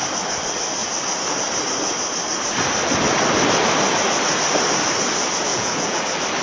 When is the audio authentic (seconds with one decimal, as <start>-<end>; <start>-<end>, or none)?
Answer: 0.0-5.5; 6.0-6.4